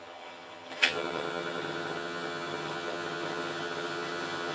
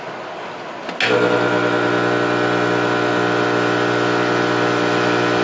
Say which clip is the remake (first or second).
first